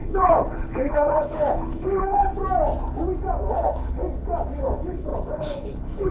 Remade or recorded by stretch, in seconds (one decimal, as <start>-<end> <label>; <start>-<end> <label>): 0.0-2.4 remade; 2.4-3.5 recorded; 3.5-4.0 remade; 4.0-4.6 recorded; 4.6-6.1 remade